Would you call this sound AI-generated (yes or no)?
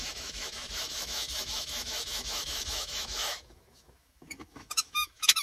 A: yes